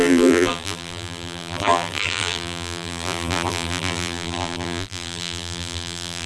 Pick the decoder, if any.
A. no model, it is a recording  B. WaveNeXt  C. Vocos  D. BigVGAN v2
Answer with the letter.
D